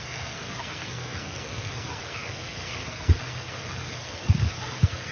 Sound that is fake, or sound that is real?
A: fake